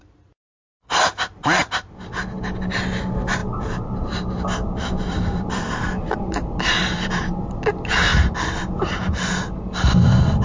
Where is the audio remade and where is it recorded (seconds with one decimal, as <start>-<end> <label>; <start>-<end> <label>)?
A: 0.0-1.4 recorded; 1.4-1.9 remade; 1.9-3.4 recorded; 3.4-7.4 remade; 7.4-8.1 recorded; 8.1-9.3 remade; 9.3-10.4 recorded